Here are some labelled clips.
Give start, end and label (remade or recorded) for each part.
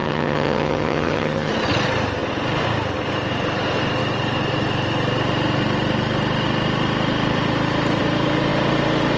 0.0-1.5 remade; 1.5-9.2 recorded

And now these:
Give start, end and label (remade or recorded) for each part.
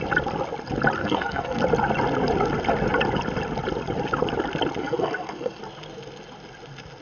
0.0-1.0 recorded; 1.0-1.6 remade; 1.6-4.8 recorded; 4.8-5.6 remade; 5.6-7.0 recorded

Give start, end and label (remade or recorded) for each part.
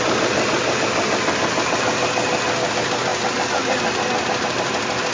0.0-5.1 recorded